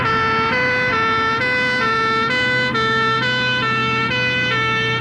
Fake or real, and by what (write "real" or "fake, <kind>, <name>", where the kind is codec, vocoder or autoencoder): real